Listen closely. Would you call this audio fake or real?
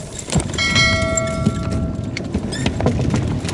real